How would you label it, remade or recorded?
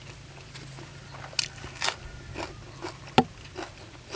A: recorded